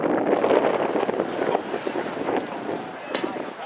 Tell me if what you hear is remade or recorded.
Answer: recorded